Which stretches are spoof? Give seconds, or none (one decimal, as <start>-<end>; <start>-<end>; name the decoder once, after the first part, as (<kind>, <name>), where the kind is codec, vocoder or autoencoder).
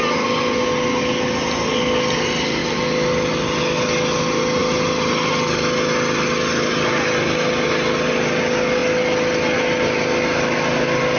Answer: none